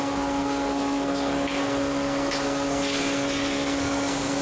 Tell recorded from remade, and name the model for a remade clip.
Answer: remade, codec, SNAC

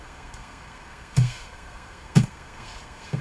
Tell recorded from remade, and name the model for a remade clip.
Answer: remade, codec, SNAC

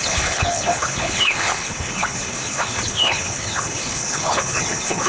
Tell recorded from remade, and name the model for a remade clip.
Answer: remade, codec, HILCodec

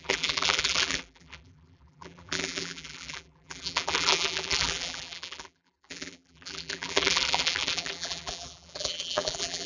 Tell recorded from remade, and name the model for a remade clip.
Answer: remade, vocoder, BigVGAN v2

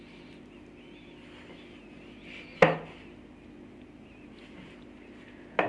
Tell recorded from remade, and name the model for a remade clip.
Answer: recorded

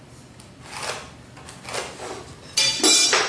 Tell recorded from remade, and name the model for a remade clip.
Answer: recorded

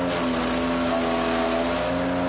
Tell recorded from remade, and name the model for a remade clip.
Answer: recorded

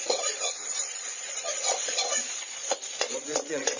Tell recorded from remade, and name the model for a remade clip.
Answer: remade, vocoder, Vocos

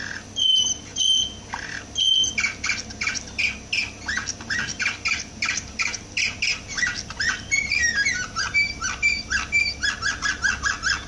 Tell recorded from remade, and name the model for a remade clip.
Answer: recorded